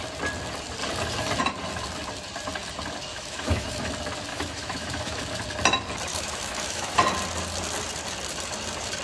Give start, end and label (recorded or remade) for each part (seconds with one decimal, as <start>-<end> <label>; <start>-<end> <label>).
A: 0.0-3.1 recorded; 3.1-3.9 remade; 3.9-4.3 recorded; 4.3-5.2 remade; 5.2-6.1 recorded; 6.1-6.9 remade; 6.9-9.0 recorded